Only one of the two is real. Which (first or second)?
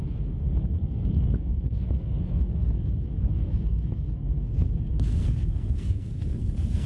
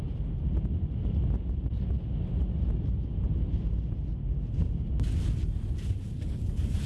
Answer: second